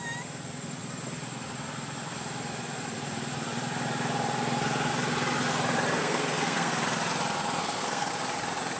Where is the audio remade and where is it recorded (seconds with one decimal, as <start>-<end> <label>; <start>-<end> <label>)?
0.0-6.0 recorded; 6.0-6.7 remade; 6.7-7.6 recorded; 7.6-8.1 remade; 8.1-8.8 recorded